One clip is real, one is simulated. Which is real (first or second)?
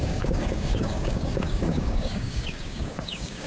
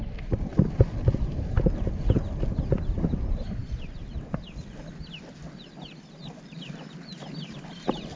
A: second